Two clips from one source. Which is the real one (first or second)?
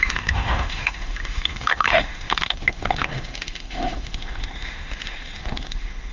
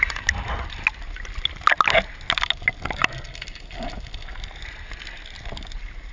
second